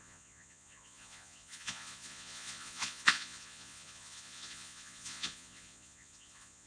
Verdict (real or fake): fake